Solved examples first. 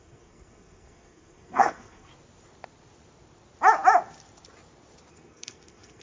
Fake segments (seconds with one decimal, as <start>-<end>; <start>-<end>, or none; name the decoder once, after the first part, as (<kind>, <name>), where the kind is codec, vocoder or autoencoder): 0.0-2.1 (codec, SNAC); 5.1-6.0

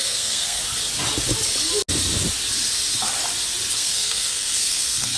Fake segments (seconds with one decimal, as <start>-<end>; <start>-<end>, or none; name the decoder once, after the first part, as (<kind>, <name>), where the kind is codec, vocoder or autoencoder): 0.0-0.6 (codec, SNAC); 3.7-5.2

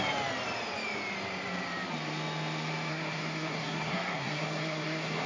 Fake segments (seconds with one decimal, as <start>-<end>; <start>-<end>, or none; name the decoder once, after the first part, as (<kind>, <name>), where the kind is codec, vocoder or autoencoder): 2.9-5.3 (codec, SNAC)

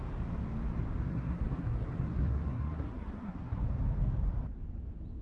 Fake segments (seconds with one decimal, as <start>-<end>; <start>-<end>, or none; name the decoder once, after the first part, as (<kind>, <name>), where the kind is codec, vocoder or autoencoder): 1.1-3.6 (codec, SNAC)